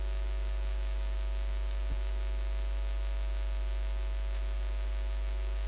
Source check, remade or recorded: recorded